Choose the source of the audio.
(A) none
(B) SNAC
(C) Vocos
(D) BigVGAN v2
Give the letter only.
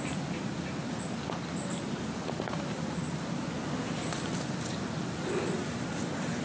A